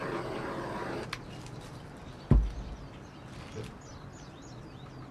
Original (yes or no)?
yes